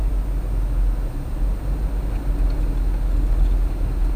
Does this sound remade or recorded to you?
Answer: recorded